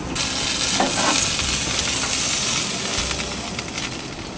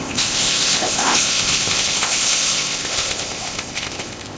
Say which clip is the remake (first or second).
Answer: second